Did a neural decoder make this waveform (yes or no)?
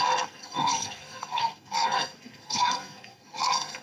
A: yes